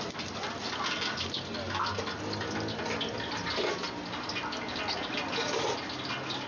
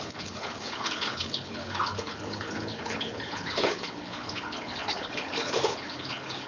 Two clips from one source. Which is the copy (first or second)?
second